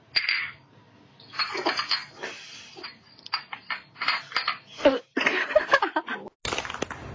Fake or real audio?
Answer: real